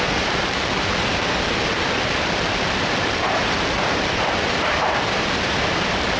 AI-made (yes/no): yes